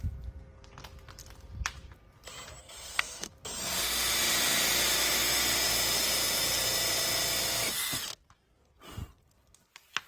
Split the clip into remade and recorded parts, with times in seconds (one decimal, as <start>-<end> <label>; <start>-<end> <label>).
0.0-2.6 recorded; 2.6-3.3 remade; 3.3-10.1 recorded